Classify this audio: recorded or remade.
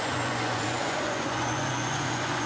remade